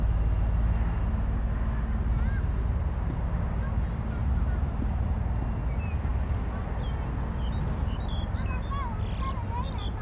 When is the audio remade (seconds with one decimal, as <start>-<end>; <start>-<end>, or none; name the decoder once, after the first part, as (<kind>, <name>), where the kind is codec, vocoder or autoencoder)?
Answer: 4.2-5.2 (vocoder, BigVGAN v2)